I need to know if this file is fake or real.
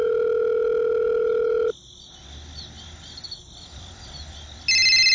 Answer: real